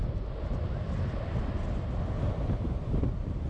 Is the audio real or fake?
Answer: real